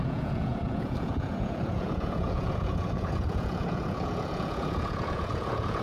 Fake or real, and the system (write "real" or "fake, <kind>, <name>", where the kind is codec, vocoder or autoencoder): fake, vocoder, Vocos